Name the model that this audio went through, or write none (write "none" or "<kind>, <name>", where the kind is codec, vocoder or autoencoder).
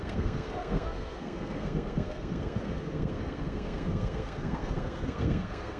codec, SNAC